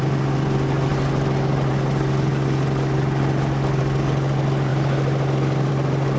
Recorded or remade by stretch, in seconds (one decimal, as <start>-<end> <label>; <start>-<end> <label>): 0.0-6.2 recorded